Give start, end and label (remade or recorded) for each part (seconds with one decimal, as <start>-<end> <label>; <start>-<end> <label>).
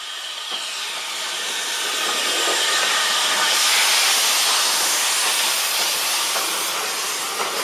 0.0-7.6 recorded